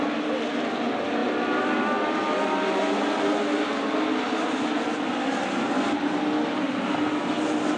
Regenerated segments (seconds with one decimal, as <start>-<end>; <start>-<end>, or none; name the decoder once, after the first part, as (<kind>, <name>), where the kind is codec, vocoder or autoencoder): none